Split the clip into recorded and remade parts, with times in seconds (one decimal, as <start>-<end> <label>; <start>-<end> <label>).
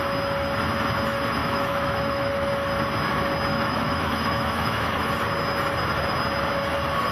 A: 0.0-1.4 recorded; 1.4-2.5 remade; 2.5-3.5 recorded; 3.5-5.1 remade; 5.1-7.1 recorded